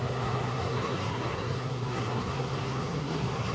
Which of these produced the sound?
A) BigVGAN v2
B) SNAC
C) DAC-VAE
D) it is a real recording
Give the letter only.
B